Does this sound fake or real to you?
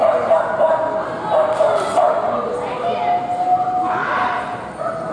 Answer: real